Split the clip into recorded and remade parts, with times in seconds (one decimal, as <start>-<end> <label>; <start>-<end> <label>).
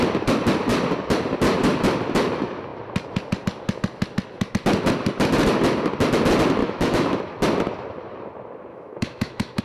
0.0-6.6 recorded; 6.6-7.2 remade; 7.2-8.7 recorded; 8.7-9.6 remade